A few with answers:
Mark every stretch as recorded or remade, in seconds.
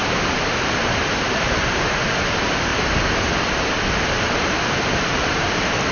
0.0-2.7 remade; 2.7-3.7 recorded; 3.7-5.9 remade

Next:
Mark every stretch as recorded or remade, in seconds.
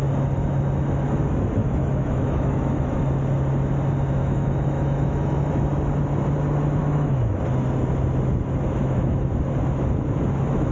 0.0-1.6 recorded; 1.6-3.0 remade; 3.0-4.2 recorded; 4.2-5.5 remade; 5.5-6.8 recorded; 6.8-7.4 remade; 7.4-8.8 recorded; 8.8-9.3 remade; 9.3-10.7 recorded